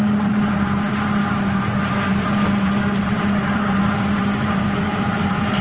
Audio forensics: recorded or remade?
remade